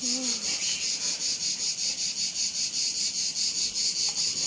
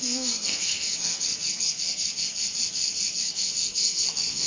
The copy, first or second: second